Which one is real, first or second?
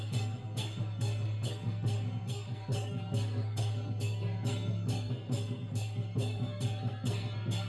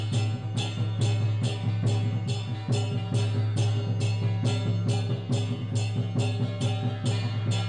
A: second